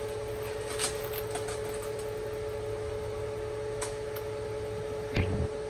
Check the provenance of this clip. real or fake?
real